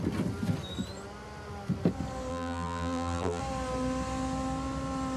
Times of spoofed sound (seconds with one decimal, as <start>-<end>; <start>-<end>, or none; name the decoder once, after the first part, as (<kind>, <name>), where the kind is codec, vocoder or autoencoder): 2.3-3.4 (vocoder, BigVGAN v2)

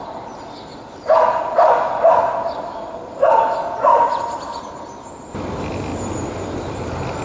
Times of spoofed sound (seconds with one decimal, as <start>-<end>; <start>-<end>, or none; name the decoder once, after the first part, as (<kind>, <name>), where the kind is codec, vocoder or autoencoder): 0.7-4.6 (vocoder, BigVGAN v2)

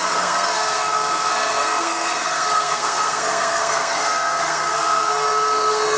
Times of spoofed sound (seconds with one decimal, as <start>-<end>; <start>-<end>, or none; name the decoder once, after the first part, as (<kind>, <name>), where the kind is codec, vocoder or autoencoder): 0.0-6.0 (codec, SNAC)

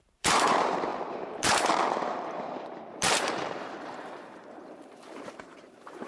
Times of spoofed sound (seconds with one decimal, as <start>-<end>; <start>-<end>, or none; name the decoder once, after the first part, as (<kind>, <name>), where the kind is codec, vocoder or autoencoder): 0.0-6.1 (vocoder, BigVGAN v2)

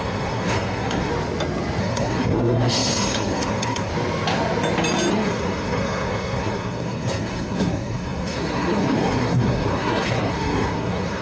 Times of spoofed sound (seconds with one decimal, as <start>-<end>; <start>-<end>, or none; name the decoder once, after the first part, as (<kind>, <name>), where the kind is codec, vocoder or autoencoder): 0.0-1.1 (codec, SNAC); 1.8-3.9; 5.1-11.2

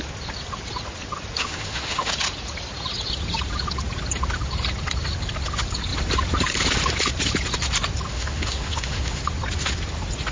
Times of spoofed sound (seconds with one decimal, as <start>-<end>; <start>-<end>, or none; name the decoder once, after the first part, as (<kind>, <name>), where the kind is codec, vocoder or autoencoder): 1.4-2.1 (autoencoder, DAC-VAE); 8.1-9.2

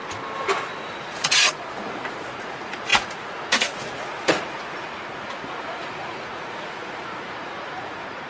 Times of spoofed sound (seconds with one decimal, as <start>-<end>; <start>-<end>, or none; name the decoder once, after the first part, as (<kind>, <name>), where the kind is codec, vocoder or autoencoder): 1.0-8.3 (vocoder, Vocos)